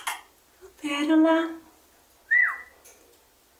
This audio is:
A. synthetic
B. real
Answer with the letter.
B